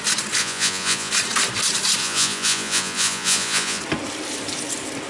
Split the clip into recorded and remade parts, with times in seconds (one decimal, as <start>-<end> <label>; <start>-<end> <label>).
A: 0.0-0.4 recorded; 0.4-1.1 remade; 1.1-2.0 recorded; 2.0-3.8 remade; 3.8-5.1 recorded